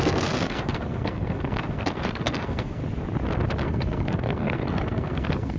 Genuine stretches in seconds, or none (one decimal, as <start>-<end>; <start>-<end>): 2.8-3.6